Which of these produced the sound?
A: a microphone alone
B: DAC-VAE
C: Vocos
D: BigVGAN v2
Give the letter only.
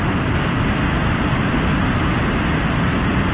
D